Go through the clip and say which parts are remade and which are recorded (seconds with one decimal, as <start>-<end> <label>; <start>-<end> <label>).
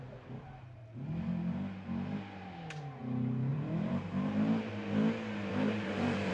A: 0.0-3.5 recorded; 3.5-4.7 remade; 4.7-5.5 recorded; 5.5-6.3 remade